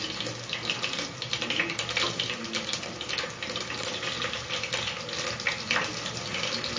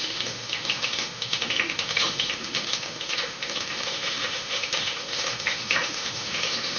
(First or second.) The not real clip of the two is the second